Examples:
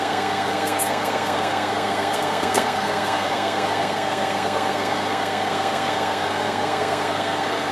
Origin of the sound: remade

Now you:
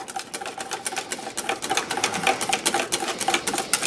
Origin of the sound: recorded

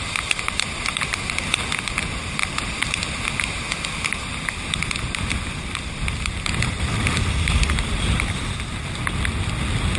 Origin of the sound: recorded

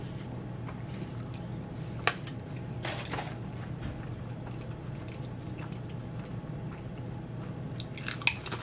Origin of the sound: recorded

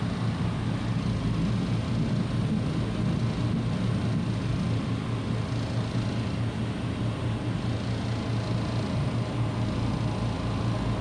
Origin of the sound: recorded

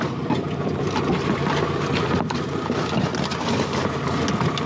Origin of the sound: recorded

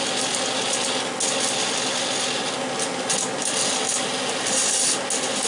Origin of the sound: recorded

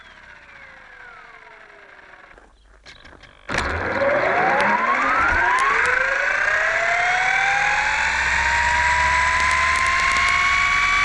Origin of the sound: recorded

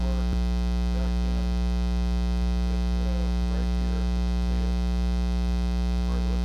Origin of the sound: recorded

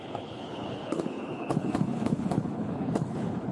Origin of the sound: remade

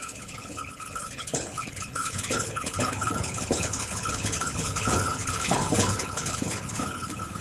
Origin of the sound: remade